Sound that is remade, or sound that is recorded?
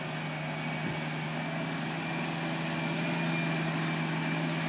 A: recorded